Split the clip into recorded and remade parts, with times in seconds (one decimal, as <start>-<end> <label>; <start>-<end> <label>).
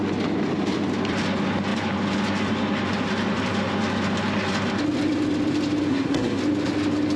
0.0-5.9 recorded; 5.9-6.4 remade; 6.4-7.2 recorded